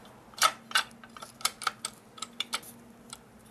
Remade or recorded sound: recorded